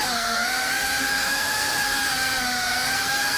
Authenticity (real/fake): fake